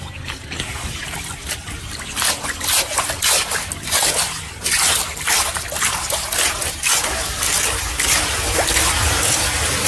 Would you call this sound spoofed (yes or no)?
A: no